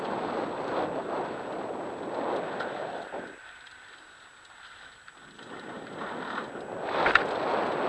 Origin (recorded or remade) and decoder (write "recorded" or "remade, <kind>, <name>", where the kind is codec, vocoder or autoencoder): recorded